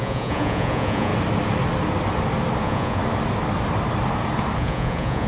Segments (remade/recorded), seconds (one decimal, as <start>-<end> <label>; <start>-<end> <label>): 0.0-1.1 remade; 1.1-2.6 recorded; 2.6-3.0 remade; 3.0-4.6 recorded; 4.6-5.3 remade